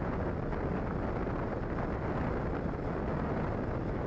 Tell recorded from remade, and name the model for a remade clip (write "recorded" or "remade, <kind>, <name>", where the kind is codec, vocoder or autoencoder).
recorded